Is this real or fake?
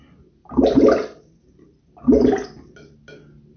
real